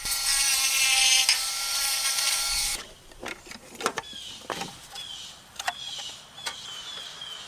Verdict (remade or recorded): recorded